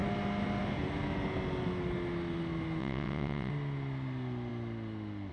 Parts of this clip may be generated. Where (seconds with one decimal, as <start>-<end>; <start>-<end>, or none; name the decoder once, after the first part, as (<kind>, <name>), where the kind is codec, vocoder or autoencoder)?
2.8-3.5 (vocoder, WaveNeXt)